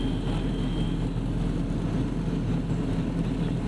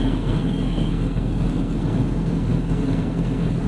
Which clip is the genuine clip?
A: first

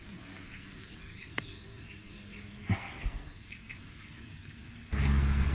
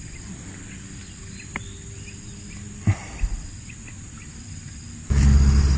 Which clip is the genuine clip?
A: second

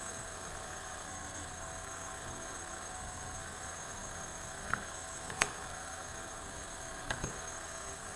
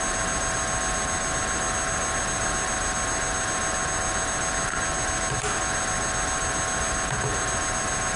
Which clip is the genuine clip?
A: second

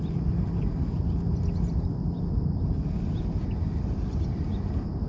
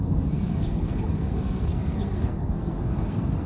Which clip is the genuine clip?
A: first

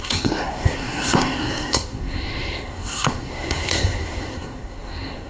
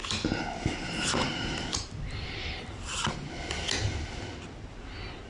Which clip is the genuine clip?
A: second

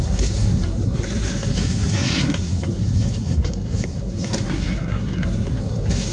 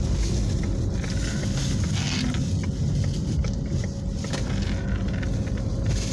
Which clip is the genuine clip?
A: second